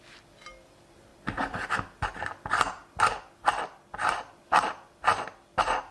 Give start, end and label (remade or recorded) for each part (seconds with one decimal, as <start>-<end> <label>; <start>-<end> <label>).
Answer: 0.0-5.9 recorded